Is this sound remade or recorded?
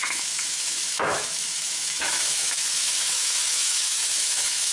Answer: remade